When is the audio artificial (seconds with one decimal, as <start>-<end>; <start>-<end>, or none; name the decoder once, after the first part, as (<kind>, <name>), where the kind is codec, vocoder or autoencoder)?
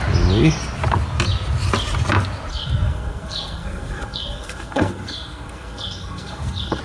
2.5-6.8 (codec, SNAC)